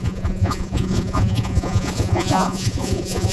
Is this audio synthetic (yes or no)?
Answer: yes